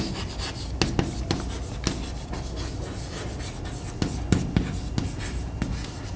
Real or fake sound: real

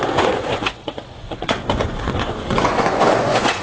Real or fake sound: fake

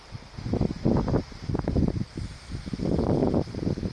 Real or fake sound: real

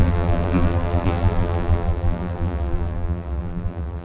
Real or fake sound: fake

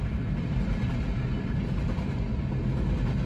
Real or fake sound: real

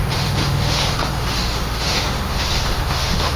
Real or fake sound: fake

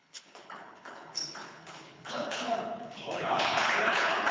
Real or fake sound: fake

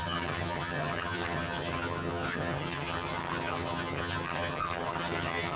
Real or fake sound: fake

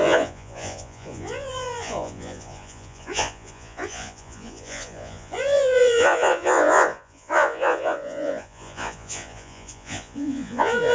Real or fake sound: fake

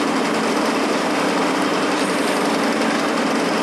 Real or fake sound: real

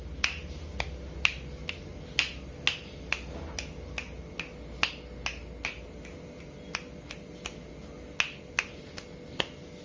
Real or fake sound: real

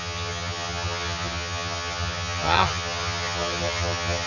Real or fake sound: fake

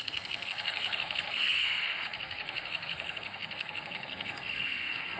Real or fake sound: fake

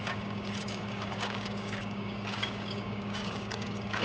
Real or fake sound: fake